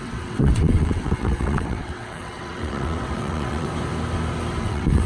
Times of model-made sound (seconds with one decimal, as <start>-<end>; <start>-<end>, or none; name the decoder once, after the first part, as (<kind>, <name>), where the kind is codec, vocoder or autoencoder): 0.0-3.7 (vocoder, WaveNeXt); 4.6-5.1